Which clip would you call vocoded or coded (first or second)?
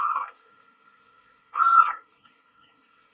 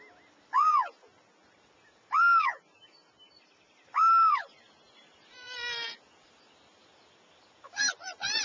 first